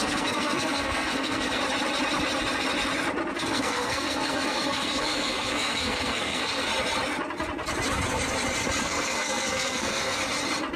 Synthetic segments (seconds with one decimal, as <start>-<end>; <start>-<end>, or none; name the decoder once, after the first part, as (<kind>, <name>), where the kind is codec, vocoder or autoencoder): 0.0-1.6 (codec, SNAC); 3.4-6.7; 8.8-10.2